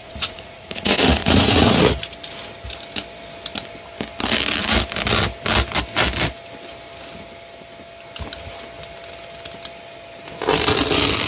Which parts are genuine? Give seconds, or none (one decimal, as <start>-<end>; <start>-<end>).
2.0-11.3